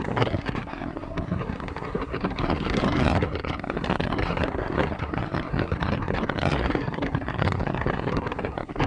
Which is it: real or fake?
fake